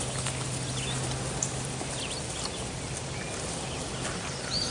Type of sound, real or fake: real